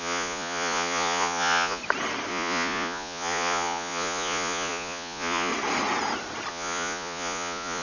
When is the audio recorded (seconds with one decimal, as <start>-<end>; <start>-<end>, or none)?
1.8-2.3; 5.5-6.5